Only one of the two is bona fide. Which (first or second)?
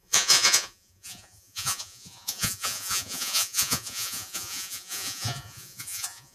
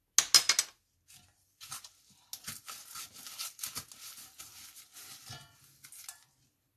second